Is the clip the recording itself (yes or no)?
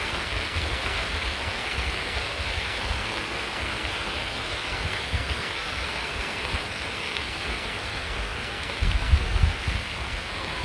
no